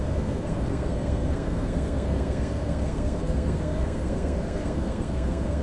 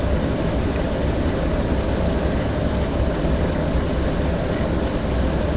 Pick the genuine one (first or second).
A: second